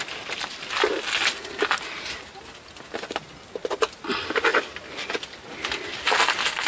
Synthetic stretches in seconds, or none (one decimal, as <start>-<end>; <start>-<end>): none